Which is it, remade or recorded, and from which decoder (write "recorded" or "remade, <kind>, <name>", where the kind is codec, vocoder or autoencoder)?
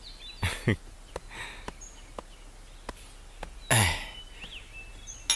recorded